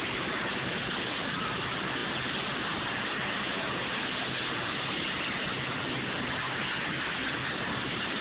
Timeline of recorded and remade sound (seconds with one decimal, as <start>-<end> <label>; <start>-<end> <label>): 0.0-8.2 recorded